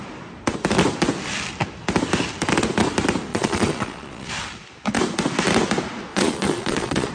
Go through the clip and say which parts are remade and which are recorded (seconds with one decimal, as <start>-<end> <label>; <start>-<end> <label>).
0.0-3.3 recorded; 3.3-4.3 remade; 4.3-6.1 recorded; 6.1-7.1 remade